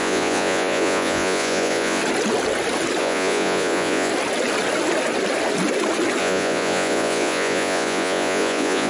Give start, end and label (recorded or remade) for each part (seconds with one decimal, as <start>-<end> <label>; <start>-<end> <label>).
0.0-2.0 remade; 2.0-3.0 recorded; 3.0-4.1 remade; 4.1-6.2 recorded; 6.2-8.9 remade